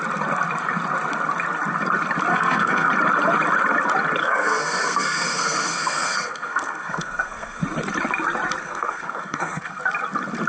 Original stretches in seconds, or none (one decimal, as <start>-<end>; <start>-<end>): 0.0-2.3; 2.9-4.2; 7.6-8.6; 9.8-10.5